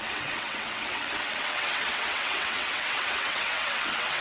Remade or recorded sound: remade